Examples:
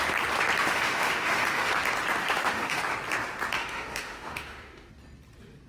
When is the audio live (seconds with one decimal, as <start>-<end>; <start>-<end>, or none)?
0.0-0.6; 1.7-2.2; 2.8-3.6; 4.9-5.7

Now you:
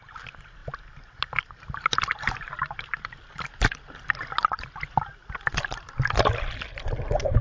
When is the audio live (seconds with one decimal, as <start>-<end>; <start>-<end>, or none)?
0.0-7.4

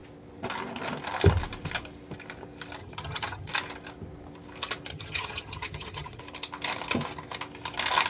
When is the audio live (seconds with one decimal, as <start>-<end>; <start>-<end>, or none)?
0.0-2.8; 3.5-4.9; 6.2-8.1

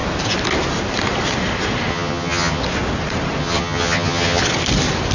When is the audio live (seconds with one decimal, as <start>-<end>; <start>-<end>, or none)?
0.0-1.9; 2.6-3.4; 4.4-5.1

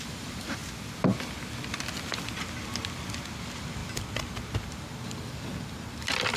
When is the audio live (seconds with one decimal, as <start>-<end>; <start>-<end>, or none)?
0.6-3.4; 3.8-4.7